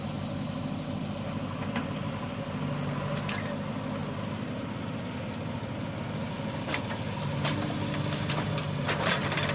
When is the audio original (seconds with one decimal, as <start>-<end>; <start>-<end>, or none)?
0.0-9.5